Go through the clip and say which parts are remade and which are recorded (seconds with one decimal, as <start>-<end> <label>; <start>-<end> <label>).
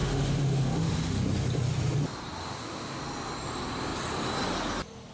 0.0-1.2 remade; 1.2-2.4 recorded; 2.4-3.0 remade; 3.0-5.1 recorded